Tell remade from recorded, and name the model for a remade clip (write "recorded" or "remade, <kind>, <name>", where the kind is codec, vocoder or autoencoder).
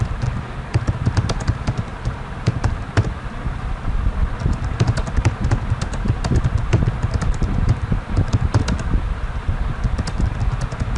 recorded